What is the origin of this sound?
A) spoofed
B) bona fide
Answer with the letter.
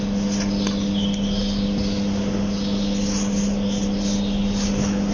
B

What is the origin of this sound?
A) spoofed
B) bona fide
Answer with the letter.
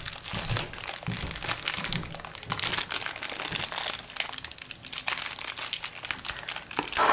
B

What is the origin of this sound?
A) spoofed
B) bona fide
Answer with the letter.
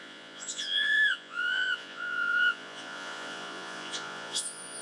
A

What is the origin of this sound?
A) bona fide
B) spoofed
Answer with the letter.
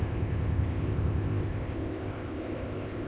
B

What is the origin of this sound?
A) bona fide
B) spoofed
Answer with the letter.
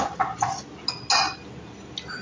A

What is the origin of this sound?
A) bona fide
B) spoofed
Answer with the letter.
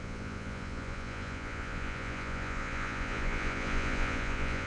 B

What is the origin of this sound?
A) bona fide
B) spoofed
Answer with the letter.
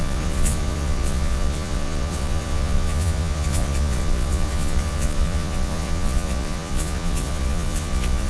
B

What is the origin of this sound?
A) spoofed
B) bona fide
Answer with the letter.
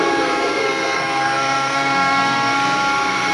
A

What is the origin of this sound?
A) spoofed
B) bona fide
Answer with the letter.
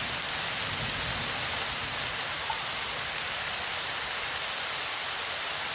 B